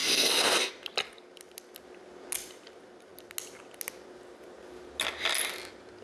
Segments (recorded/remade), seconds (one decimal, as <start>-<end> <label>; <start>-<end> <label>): 0.0-0.7 remade; 0.7-6.0 recorded